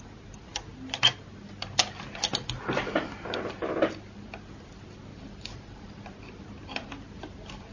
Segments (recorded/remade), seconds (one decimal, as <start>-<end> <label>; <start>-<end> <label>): 0.0-5.1 recorded; 5.1-6.0 remade; 6.0-7.7 recorded

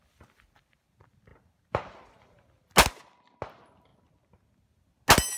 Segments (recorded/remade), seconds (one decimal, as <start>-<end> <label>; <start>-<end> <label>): 0.0-5.4 recorded